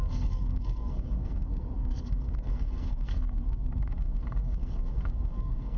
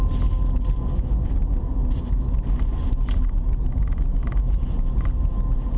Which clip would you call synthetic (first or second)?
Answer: first